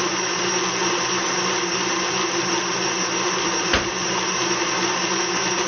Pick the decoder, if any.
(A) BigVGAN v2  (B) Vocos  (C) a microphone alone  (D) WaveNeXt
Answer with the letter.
C